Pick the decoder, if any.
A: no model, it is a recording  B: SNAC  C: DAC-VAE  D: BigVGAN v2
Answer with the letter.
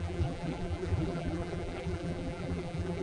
D